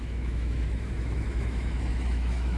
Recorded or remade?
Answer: remade